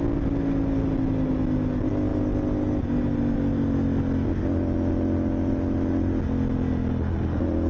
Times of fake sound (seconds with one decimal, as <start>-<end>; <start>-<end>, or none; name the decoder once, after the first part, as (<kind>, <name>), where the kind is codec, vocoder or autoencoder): none

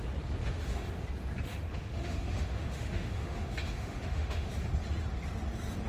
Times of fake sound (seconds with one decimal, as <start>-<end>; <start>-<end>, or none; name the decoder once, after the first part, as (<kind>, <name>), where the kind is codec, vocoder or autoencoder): 0.4-1.0 (autoencoder, DAC-VAE); 1.5-4.5

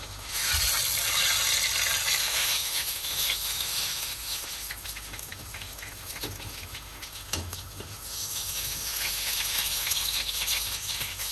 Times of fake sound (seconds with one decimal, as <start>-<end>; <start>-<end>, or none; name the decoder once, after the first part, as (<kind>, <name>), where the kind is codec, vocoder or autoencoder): 0.0-0.5 (autoencoder, DAC-VAE); 2.2-11.3